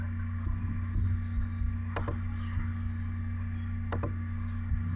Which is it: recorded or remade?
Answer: recorded